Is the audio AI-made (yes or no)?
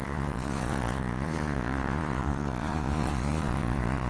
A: yes